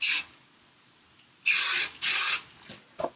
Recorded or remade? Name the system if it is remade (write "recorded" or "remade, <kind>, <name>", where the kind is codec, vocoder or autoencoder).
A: recorded